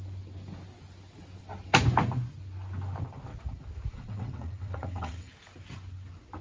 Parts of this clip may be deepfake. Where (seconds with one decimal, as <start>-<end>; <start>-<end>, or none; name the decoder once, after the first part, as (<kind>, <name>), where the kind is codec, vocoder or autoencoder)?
3.9-5.3 (vocoder, WaveNeXt)